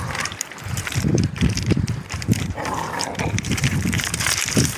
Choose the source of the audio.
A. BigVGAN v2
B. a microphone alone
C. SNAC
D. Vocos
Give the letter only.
A